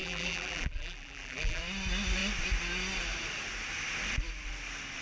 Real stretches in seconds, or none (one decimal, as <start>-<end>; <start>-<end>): 1.6-5.0